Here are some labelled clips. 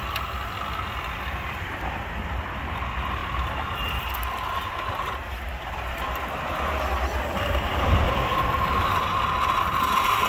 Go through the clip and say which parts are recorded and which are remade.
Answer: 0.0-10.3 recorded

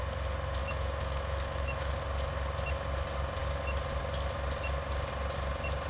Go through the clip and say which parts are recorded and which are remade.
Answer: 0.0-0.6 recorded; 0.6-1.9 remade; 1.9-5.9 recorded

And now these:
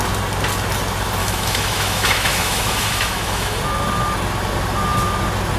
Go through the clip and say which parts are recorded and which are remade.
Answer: 0.0-1.2 recorded; 1.2-3.6 remade; 3.6-5.6 recorded